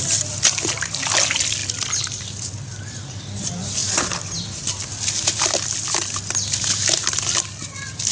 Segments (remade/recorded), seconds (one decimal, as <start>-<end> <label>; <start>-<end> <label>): 0.0-8.1 recorded